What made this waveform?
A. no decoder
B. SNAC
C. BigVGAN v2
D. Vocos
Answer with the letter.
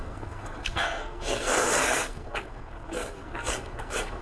B